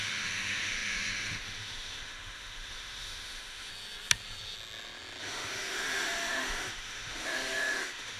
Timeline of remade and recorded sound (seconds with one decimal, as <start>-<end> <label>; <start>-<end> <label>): 0.0-3.7 remade; 3.7-5.2 recorded; 5.2-8.2 remade